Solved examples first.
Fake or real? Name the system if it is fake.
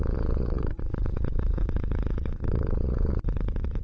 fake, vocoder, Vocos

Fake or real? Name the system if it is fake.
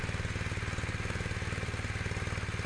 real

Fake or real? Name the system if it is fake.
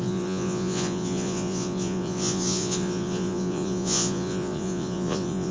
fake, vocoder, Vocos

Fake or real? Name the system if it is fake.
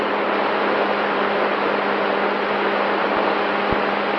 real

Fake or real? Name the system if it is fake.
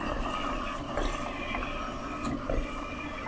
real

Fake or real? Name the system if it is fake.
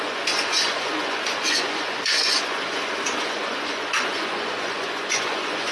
fake, vocoder, Vocos